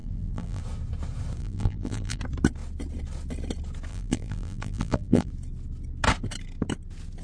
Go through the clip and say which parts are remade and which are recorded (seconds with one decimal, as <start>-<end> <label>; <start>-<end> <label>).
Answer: 0.0-0.6 remade; 0.6-1.4 recorded; 1.4-2.2 remade; 2.2-3.9 recorded; 3.9-5.3 remade; 5.3-7.2 recorded